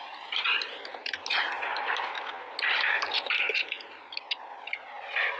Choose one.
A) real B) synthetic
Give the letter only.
A